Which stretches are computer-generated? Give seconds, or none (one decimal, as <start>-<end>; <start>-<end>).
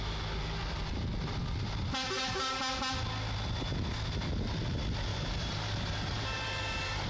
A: 5.1-7.1